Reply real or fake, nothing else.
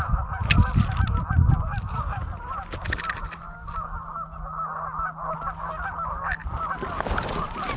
real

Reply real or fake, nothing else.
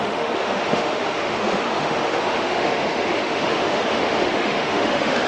fake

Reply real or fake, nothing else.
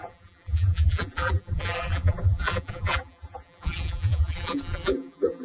fake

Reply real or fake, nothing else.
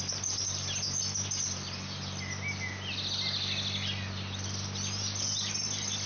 real